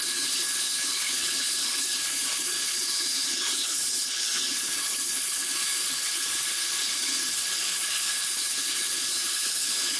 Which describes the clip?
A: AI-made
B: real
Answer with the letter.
A